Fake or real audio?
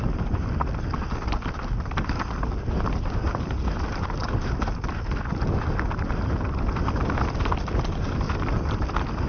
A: real